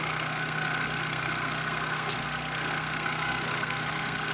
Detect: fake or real fake